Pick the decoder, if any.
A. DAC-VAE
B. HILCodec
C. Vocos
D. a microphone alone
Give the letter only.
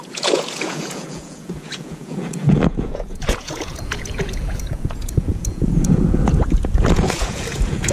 C